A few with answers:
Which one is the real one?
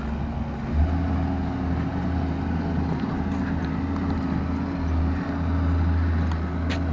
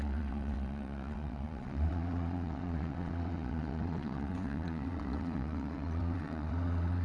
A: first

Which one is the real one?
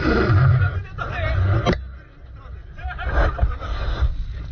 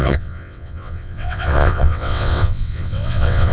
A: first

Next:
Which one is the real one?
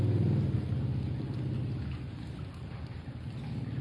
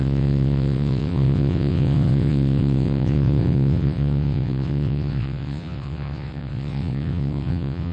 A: first